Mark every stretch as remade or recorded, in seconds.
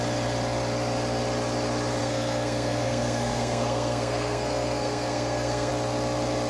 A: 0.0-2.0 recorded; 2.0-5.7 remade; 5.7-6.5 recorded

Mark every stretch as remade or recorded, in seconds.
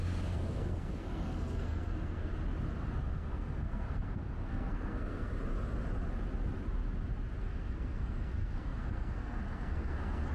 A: 0.0-2.3 remade; 2.3-3.0 recorded; 3.0-5.3 remade; 5.3-7.4 recorded; 7.4-10.3 remade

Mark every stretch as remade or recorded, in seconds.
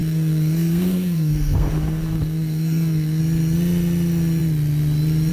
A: 0.0-3.2 remade; 3.2-5.3 recorded